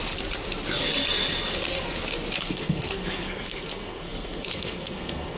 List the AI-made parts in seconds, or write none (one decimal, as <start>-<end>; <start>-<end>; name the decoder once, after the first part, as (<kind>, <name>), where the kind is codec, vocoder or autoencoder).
2.4-5.4 (codec, SNAC)